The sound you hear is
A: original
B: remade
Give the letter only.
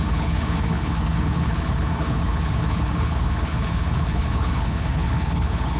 B